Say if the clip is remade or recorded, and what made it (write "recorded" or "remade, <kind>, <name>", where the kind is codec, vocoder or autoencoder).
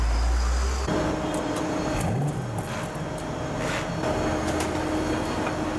recorded